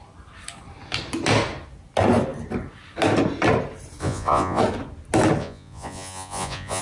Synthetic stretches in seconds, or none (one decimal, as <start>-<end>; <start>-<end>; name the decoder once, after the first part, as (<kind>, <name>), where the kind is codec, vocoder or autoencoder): 4.0-4.6 (vocoder, Vocos); 5.4-6.8